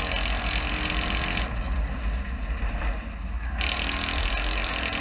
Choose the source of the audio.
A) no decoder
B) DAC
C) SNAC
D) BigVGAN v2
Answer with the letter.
A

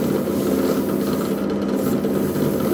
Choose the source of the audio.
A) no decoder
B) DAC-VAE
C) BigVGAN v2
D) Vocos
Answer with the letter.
A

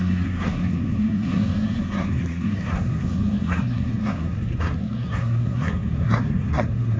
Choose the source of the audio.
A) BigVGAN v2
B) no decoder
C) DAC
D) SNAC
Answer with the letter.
D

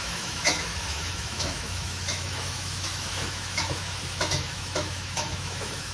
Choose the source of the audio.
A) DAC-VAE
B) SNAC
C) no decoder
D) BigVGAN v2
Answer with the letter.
A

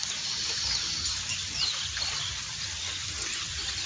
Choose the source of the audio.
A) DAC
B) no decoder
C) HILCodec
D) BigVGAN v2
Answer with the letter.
B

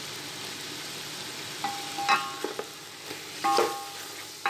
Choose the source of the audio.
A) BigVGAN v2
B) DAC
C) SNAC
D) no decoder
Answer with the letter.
D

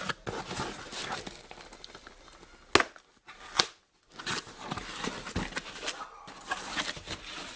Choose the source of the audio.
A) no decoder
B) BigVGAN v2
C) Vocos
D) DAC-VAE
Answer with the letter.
A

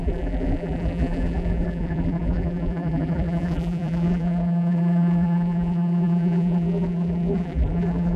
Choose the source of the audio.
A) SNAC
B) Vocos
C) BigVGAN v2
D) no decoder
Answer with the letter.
C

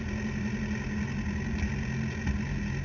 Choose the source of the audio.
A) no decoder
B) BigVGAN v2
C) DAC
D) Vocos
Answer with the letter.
A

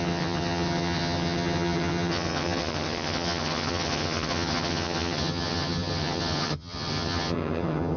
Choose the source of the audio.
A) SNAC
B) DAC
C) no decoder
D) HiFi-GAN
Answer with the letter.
D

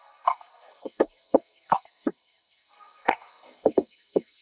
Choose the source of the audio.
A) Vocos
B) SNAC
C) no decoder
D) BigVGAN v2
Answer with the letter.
B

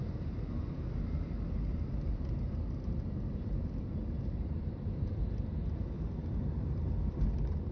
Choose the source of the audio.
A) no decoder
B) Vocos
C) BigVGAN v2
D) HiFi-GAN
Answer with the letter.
C